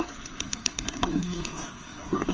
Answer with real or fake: fake